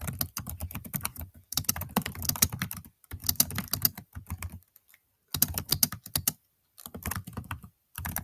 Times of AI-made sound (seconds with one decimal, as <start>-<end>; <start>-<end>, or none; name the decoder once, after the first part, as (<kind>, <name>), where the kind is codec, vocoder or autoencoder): 1.1-1.7 (vocoder, BigVGAN v2)